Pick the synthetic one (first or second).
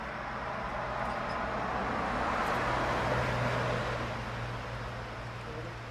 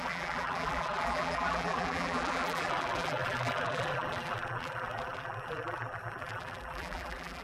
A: second